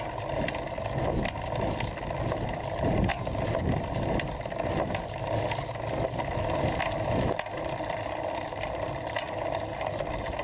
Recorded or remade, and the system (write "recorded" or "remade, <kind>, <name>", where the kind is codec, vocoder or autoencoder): recorded